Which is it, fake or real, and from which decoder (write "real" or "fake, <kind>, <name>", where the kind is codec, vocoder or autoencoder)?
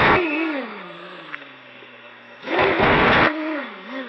fake, codec, SNAC